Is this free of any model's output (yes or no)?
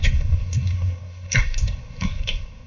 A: no